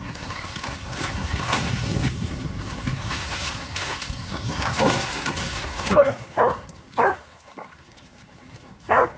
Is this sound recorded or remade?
remade